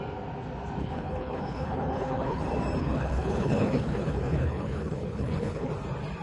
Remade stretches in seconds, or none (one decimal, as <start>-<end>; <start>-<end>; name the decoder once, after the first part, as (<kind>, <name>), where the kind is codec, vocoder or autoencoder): 0.8-2.4 (codec, HILCodec); 2.8-5.7